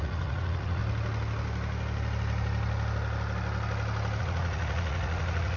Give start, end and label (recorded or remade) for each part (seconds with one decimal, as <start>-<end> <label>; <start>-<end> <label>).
0.0-0.8 remade; 0.8-4.2 recorded; 4.2-5.6 remade